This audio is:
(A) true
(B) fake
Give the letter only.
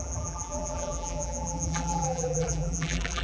B